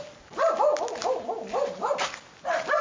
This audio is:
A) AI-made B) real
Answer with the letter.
B